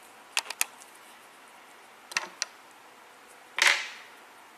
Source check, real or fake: real